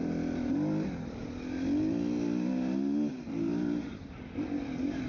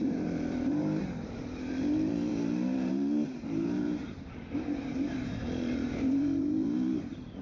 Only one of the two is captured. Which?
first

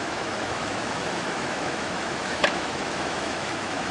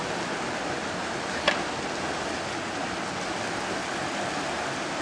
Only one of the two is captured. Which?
second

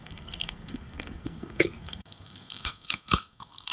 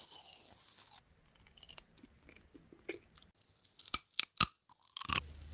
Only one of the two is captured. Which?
second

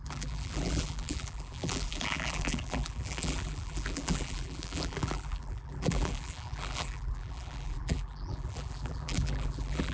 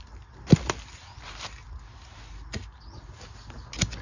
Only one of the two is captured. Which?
second